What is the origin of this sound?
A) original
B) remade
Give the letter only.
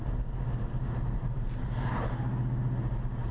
A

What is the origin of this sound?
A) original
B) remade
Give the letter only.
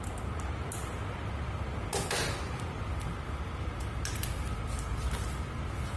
A